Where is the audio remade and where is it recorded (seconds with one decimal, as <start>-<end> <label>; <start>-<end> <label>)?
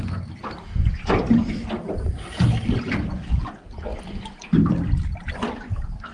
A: 0.0-6.1 recorded